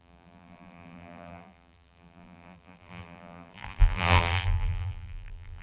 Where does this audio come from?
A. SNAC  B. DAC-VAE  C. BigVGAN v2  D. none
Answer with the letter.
C